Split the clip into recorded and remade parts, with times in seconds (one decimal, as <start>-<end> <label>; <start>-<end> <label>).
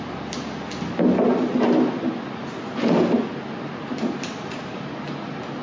0.0-5.6 recorded